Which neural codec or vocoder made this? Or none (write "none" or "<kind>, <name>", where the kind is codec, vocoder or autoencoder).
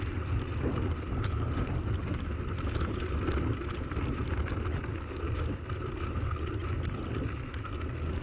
none